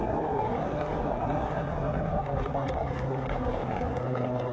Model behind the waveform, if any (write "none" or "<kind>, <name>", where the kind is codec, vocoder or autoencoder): codec, SNAC